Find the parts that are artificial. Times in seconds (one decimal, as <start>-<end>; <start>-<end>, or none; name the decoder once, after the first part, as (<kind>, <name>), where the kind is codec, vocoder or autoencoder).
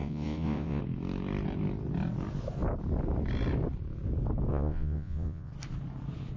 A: 0.0-0.8 (vocoder, Vocos); 4.5-5.5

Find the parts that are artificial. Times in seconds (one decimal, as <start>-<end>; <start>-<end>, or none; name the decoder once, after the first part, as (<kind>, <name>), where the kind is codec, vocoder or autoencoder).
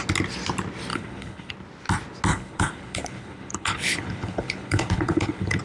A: 0.9-1.5 (codec, HILCodec); 2.3-5.6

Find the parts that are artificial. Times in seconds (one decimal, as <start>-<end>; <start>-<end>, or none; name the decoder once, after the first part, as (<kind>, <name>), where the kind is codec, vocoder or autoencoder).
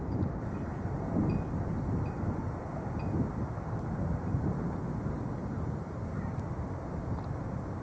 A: none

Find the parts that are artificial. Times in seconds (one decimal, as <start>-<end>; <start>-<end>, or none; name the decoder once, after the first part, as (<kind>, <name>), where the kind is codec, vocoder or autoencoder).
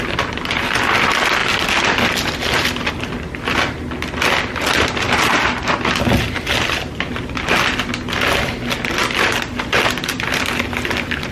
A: none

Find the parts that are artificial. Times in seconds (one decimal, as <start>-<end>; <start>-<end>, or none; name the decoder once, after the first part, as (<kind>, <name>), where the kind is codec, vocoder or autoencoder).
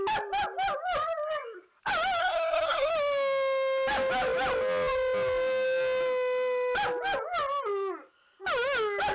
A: 2.2-2.9 (codec, SNAC)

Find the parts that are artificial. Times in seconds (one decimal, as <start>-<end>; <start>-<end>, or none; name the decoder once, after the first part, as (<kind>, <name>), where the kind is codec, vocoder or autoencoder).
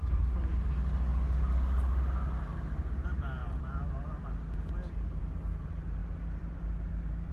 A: none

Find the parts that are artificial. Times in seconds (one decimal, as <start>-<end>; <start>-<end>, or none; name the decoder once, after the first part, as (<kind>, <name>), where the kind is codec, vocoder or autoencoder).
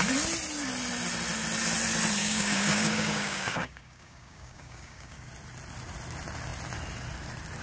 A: 2.2-5.3 (codec, DAC)